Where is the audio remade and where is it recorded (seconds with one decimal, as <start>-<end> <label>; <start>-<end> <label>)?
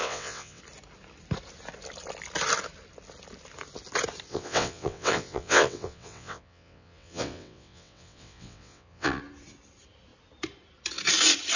0.0-0.6 remade; 0.6-4.3 recorded; 4.3-9.2 remade; 9.2-11.6 recorded